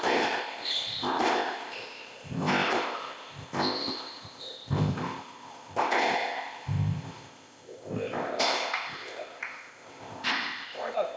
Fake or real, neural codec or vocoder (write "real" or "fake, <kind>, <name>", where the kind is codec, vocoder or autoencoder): fake, codec, ZipCodec